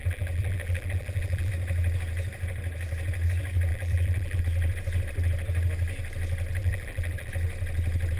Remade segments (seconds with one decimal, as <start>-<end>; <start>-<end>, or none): 0.0-1.5; 3.7-4.4; 6.6-7.3